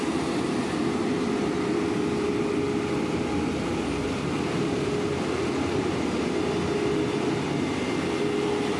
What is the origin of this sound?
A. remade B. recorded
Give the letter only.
B